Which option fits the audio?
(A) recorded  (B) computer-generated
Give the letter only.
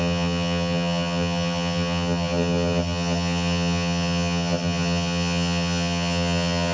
B